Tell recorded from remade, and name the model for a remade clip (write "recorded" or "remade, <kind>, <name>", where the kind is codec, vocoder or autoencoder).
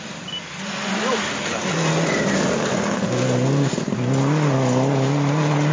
recorded